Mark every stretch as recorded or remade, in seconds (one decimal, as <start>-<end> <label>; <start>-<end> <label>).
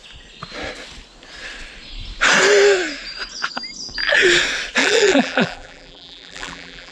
0.0-4.8 recorded; 4.8-6.9 remade